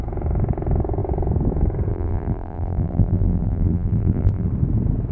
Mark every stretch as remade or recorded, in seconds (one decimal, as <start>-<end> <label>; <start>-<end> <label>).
0.0-1.9 recorded; 1.9-4.5 remade; 4.5-5.1 recorded